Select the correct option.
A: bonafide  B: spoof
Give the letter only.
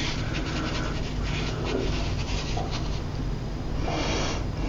A